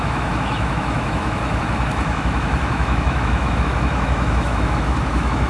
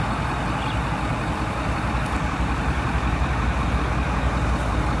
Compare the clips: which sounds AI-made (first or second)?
first